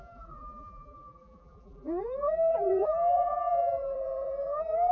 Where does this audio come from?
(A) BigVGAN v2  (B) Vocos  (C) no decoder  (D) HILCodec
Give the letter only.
A